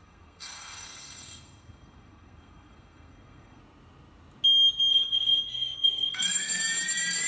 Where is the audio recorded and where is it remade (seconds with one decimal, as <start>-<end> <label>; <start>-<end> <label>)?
0.0-3.6 remade; 3.6-4.9 recorded; 4.9-6.6 remade; 6.6-7.3 recorded